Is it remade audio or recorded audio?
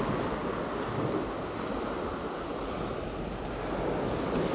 recorded